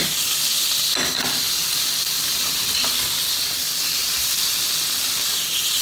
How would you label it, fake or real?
real